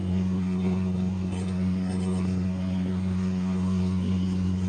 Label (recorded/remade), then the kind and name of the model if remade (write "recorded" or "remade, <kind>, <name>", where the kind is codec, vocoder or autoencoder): remade, codec, SNAC